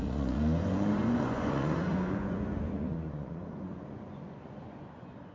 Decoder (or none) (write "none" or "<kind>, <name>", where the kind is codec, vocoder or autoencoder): vocoder, Vocos